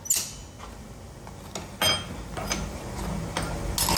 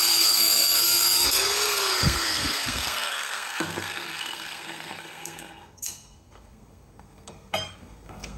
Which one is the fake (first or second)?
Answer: second